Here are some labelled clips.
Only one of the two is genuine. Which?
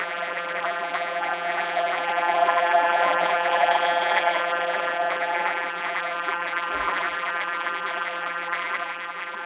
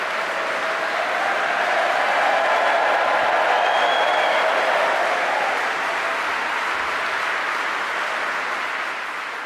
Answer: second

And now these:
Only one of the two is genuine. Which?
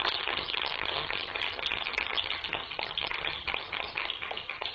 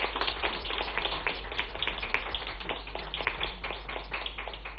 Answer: second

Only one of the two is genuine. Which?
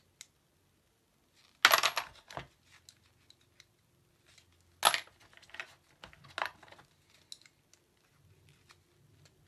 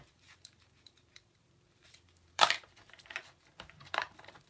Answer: first